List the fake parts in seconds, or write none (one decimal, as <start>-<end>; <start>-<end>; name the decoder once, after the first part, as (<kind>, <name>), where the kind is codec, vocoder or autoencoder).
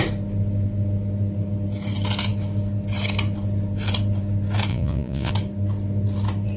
4.7-5.3 (vocoder, Vocos)